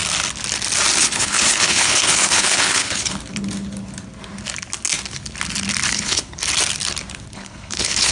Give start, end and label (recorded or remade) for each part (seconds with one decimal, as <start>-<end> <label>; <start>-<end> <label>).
0.0-1.0 recorded; 1.0-3.2 remade; 3.2-5.9 recorded; 5.9-6.4 remade; 6.4-7.3 recorded; 7.3-8.1 remade